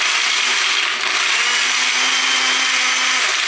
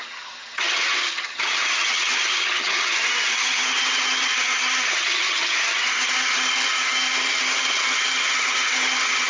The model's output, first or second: second